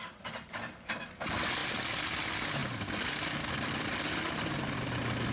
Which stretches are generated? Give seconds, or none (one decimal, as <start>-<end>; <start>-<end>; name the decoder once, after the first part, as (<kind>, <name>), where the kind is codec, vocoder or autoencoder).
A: none